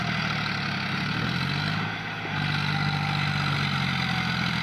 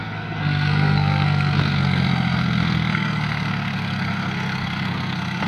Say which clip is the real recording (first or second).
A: first